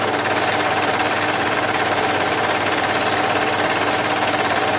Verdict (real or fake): fake